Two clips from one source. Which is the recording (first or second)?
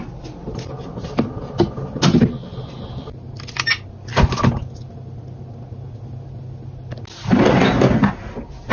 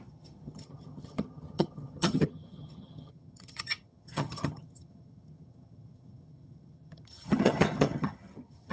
first